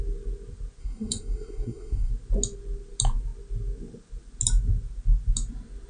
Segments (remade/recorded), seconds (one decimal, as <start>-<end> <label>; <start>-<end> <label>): 0.0-0.8 recorded; 0.8-2.1 remade; 2.1-5.9 recorded